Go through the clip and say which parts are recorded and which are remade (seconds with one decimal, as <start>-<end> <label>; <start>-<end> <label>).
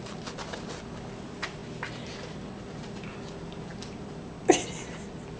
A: 0.0-5.4 recorded